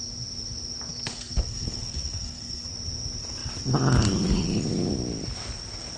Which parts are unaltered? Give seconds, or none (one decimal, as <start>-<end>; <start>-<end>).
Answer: 0.0-1.1; 2.7-6.0

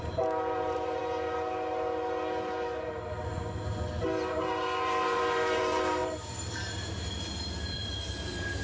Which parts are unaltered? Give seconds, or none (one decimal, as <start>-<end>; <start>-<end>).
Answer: 1.0-4.4